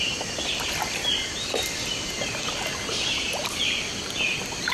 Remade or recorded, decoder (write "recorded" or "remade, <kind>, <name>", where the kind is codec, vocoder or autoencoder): recorded